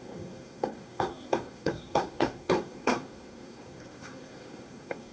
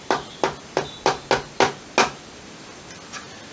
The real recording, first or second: second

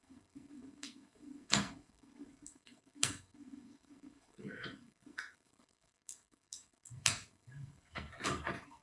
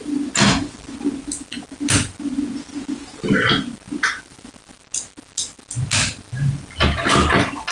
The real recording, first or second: second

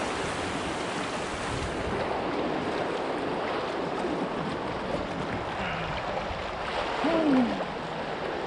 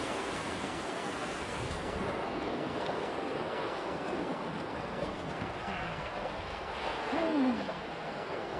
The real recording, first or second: first